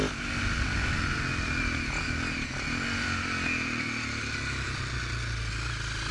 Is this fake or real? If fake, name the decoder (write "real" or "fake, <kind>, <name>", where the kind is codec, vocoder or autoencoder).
real